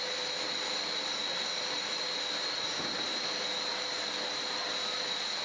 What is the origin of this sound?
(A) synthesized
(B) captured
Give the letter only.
B